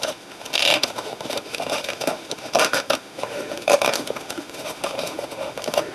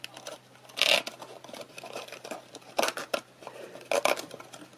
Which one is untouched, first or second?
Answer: second